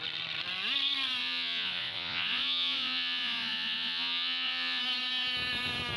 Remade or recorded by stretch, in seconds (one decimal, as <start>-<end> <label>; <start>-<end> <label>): 0.0-1.2 recorded; 1.2-4.8 remade; 4.8-6.0 recorded